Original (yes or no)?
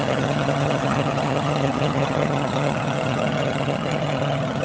no